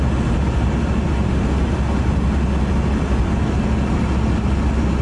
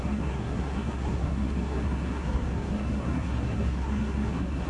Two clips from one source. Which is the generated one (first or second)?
second